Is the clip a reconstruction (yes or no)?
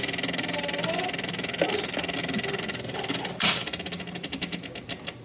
no